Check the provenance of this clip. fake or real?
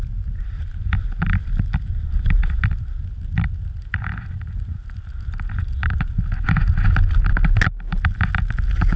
real